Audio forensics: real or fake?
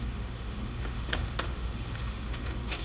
fake